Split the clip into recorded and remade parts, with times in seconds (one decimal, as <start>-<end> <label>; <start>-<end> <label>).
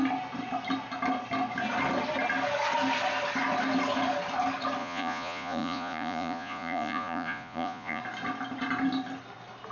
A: 0.0-4.8 recorded; 4.8-8.0 remade; 8.0-9.7 recorded